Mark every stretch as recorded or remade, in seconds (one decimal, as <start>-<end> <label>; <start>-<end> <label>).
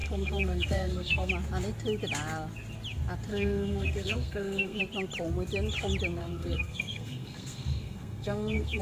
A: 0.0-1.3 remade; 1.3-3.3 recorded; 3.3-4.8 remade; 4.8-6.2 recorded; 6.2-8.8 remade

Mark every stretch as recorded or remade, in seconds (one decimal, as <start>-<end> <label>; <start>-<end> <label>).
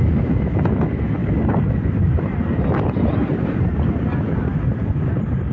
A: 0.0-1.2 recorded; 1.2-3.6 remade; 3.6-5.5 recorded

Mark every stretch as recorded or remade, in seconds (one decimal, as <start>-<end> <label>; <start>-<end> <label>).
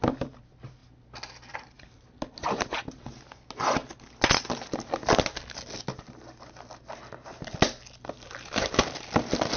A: 0.0-9.6 recorded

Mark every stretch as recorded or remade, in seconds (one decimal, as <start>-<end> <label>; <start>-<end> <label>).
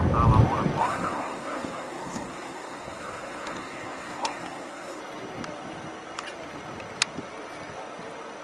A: 0.0-0.8 recorded; 0.8-5.0 remade; 5.0-8.4 recorded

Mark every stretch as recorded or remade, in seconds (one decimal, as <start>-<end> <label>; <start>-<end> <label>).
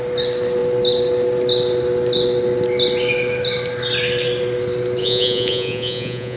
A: 0.0-5.0 recorded; 5.0-6.4 remade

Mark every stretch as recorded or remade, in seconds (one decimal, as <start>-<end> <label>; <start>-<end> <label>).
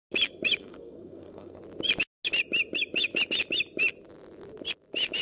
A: 0.0-0.6 recorded; 0.6-1.6 remade; 1.6-5.2 recorded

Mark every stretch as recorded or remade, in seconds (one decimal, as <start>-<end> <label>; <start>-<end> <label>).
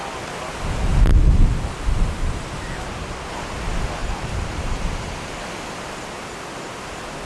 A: 0.0-4.0 recorded; 4.0-5.4 remade; 5.4-7.3 recorded